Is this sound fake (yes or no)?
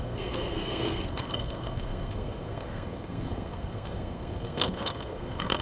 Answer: yes